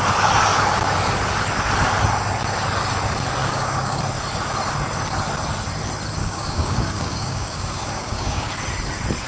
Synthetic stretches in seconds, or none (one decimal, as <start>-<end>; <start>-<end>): 3.4-4.0; 6.2-8.5